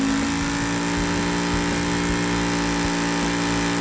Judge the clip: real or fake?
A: real